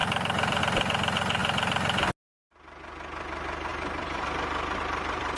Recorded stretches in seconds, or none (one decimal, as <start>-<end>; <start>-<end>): 0.6-3.7